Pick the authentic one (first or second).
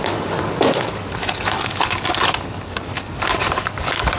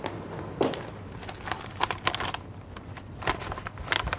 second